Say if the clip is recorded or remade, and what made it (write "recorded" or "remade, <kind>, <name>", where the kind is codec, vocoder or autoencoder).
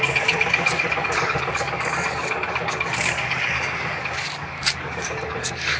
remade, codec, DAC